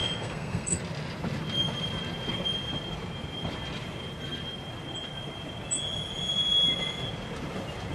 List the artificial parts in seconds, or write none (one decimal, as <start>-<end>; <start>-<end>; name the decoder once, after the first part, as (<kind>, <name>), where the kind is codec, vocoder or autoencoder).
0.0-0.8 (codec, SNAC)